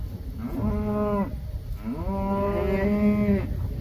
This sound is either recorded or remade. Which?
recorded